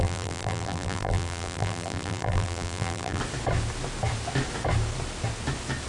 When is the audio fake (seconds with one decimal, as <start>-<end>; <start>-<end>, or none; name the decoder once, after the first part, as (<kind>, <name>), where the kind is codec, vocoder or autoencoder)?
0.0-3.2 (vocoder, BigVGAN v2)